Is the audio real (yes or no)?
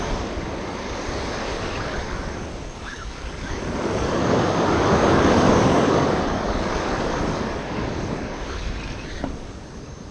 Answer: no